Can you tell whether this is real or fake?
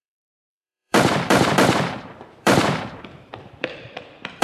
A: fake